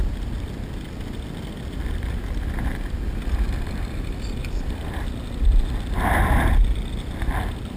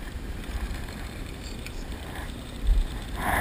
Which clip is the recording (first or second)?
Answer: first